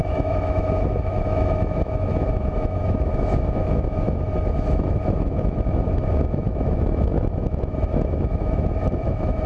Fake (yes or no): yes